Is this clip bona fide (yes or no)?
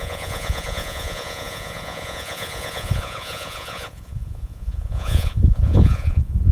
no